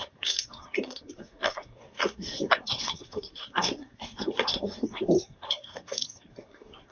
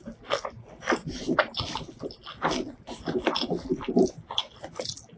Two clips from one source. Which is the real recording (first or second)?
second